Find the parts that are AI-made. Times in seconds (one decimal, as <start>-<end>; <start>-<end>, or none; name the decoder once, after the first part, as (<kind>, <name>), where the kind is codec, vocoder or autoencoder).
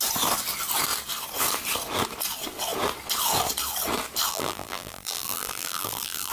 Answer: 4.3-6.3 (vocoder, BigVGAN v2)